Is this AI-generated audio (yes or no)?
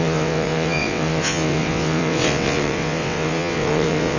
yes